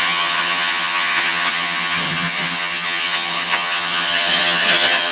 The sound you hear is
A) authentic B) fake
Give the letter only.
B